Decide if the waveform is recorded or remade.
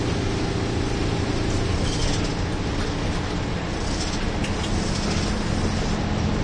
recorded